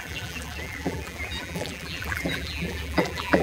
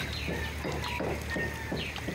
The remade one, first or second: first